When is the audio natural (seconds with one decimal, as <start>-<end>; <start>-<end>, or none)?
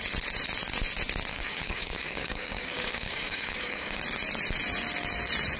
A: 0.0-1.3; 4.0-5.6